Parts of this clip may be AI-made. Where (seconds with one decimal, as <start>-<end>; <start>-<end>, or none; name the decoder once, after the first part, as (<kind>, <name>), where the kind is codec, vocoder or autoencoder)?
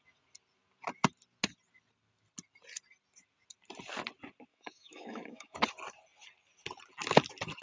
4.5-5.6 (autoencoder, DAC-VAE)